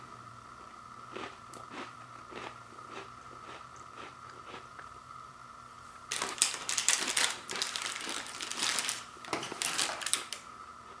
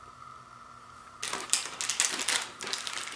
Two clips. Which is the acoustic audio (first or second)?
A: second